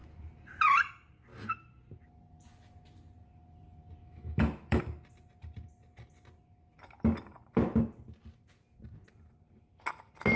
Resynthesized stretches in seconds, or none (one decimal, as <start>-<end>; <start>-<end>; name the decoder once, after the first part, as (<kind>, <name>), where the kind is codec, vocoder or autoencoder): 4.0-4.8 (autoencoder, DAC-VAE)